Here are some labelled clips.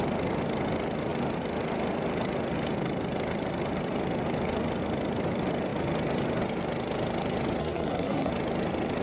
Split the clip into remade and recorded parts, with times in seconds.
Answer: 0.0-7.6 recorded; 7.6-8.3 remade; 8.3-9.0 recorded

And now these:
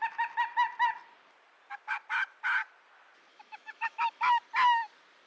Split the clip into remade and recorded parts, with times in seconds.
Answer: 0.0-3.3 recorded; 3.3-4.4 remade; 4.4-5.3 recorded